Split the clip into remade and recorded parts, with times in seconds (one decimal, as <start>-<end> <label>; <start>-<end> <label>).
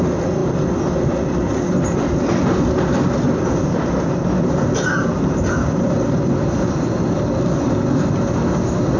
0.0-9.0 recorded